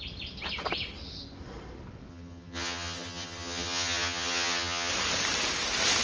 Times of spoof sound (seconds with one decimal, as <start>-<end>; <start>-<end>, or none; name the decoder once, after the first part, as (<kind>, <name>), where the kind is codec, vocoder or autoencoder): 2.1-4.9 (vocoder, HiFi-GAN)